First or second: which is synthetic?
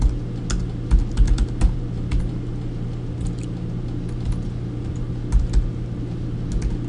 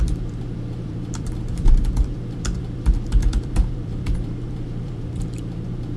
second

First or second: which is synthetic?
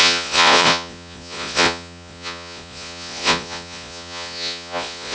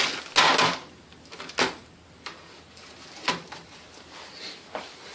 first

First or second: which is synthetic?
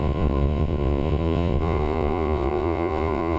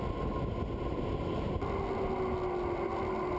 first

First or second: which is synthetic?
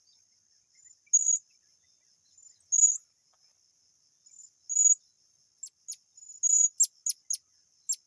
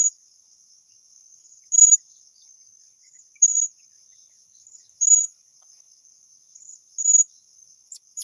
second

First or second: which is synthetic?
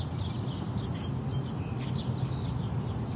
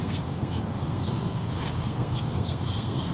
second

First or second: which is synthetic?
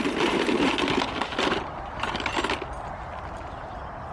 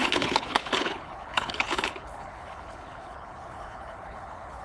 second